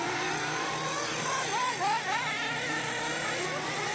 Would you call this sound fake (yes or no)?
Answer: no